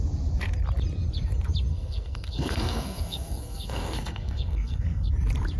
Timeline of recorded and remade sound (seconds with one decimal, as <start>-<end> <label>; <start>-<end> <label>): 0.0-1.7 recorded; 1.7-5.1 remade; 5.1-5.6 recorded